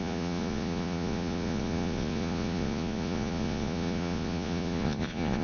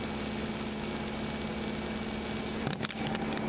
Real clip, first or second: second